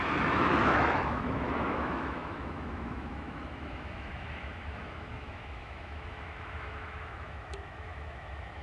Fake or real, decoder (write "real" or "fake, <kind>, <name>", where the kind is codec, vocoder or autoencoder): fake, autoencoder, DAC-VAE